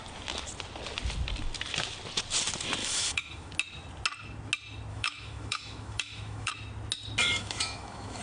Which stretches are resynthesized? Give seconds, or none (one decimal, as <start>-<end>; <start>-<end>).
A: 2.8-3.5; 4.9-6.5; 7.2-8.2